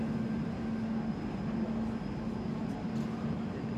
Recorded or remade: recorded